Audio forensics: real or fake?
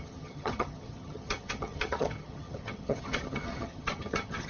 fake